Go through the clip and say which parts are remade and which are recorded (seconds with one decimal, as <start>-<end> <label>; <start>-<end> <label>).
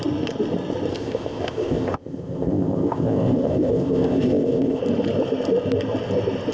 0.0-0.9 recorded; 0.9-4.8 remade; 4.8-6.5 recorded